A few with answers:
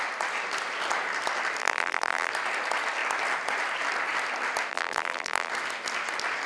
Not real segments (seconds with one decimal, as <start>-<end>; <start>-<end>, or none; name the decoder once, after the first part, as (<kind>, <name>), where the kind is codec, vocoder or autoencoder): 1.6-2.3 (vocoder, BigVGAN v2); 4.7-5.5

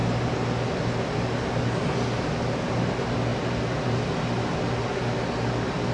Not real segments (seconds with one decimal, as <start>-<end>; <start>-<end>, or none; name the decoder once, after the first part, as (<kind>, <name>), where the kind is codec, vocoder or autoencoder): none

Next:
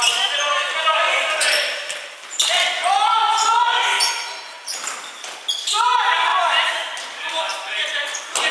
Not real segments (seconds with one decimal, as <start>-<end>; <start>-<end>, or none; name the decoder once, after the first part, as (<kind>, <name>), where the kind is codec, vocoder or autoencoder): 6.3-8.1 (vocoder, BigVGAN v2)

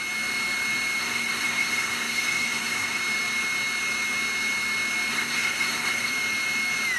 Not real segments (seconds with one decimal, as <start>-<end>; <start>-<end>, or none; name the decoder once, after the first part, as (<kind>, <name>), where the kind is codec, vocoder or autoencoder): 1.0-3.0 (codec, SNAC); 5.1-6.1